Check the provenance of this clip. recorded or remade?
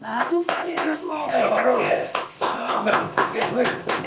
remade